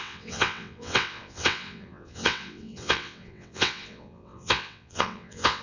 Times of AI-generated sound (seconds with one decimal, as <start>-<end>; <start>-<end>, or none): 0.0-5.6